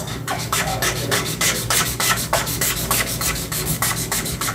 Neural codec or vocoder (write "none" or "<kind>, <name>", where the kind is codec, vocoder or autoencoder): codec, DAC